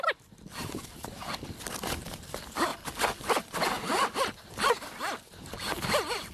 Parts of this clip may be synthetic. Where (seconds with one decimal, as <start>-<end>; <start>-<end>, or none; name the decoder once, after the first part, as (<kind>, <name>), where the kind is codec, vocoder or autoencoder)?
none